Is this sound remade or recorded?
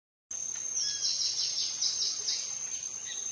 recorded